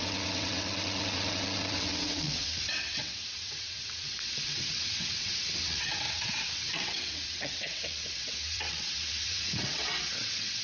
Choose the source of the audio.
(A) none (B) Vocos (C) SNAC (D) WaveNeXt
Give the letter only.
D